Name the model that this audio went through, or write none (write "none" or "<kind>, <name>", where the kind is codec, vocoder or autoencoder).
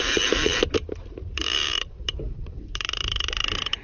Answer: vocoder, BigVGAN v2